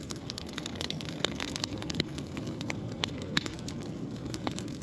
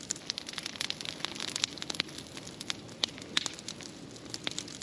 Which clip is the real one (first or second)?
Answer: second